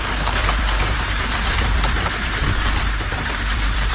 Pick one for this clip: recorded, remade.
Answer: remade